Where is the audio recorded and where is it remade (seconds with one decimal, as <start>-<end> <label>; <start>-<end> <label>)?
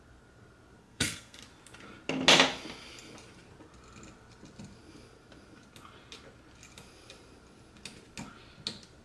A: 0.0-0.8 recorded; 0.8-1.4 remade; 1.4-9.0 recorded